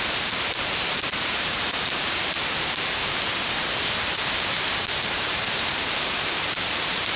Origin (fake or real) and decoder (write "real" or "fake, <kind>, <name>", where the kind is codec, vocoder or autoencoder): fake, vocoder, BigVGAN v2